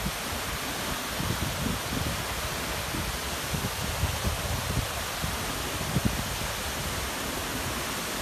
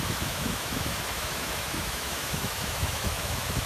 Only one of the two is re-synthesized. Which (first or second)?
second